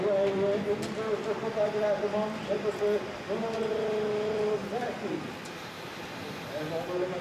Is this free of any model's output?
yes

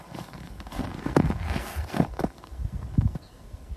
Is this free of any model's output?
no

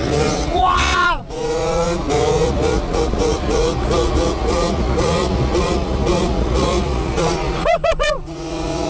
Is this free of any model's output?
no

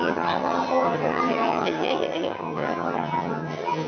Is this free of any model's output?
no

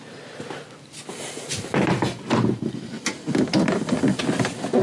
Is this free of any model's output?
yes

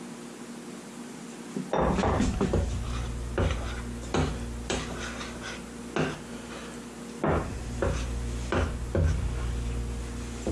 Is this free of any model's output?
yes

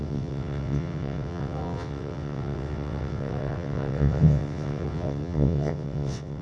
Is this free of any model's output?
no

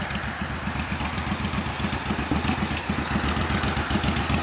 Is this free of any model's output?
yes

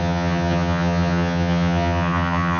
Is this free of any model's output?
no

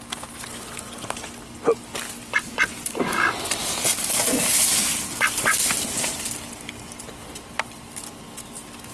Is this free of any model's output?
yes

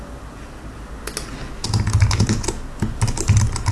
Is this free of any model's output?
yes